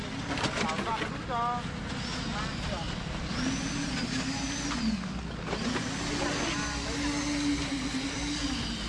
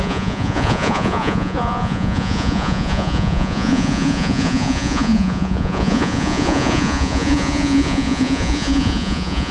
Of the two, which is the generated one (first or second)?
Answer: second